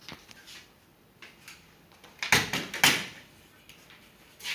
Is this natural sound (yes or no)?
yes